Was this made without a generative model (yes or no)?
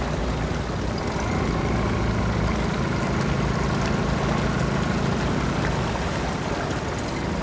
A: yes